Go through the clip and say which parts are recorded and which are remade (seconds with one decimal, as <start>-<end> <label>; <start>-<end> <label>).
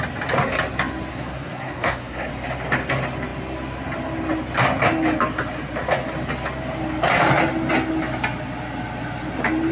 0.0-1.1 recorded; 1.1-2.3 remade; 2.3-9.7 recorded